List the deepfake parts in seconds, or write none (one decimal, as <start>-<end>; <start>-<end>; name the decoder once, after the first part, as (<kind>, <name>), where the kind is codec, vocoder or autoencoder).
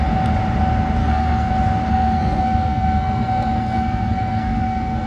1.0-1.5 (codec, SNAC); 1.9-5.1